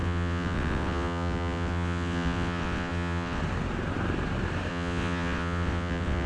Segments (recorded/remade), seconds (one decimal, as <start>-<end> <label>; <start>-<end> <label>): 0.0-3.4 remade; 3.4-4.7 recorded; 4.7-6.3 remade